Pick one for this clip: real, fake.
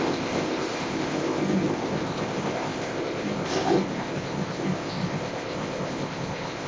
fake